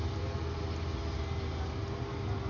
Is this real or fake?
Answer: real